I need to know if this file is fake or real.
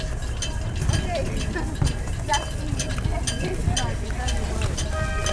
real